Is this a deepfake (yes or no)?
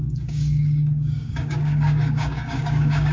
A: yes